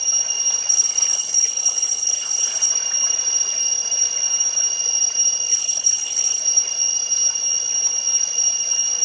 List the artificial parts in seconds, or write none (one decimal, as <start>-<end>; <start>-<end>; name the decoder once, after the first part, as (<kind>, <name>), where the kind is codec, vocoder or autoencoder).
0.7-2.7 (codec, HILCodec); 5.5-6.4